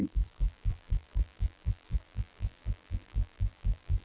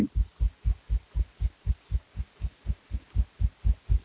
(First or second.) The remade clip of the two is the first